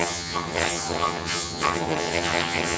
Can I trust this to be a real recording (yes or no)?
no